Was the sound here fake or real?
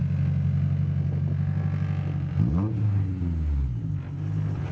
real